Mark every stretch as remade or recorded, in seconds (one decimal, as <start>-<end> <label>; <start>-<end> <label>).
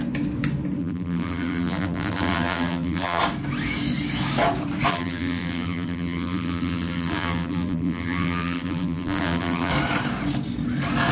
0.0-0.8 recorded; 0.8-3.2 remade; 3.2-4.9 recorded; 4.9-9.7 remade; 9.7-11.1 recorded